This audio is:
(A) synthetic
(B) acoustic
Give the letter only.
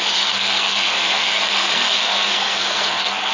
A